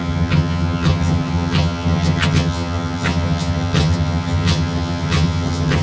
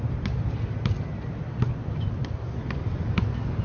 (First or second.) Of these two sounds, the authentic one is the second